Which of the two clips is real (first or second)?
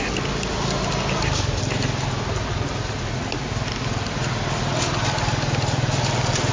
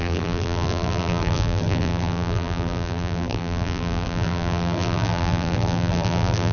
first